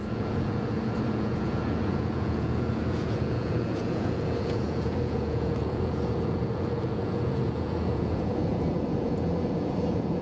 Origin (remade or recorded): remade